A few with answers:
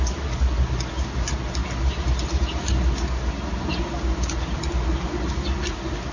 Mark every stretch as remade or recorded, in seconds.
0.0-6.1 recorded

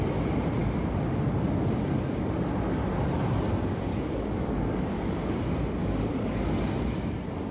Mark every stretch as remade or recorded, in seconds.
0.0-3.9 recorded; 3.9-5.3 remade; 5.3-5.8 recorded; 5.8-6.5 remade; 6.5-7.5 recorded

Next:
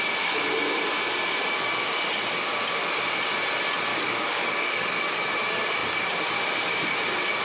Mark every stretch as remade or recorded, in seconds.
0.0-3.9 recorded; 3.9-5.3 remade; 5.3-7.4 recorded

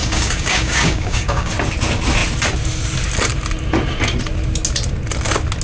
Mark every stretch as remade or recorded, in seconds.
0.0-1.5 remade; 1.5-5.6 recorded